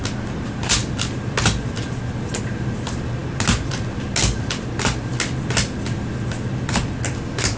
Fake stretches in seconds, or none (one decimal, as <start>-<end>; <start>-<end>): none